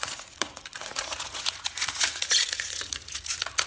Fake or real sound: fake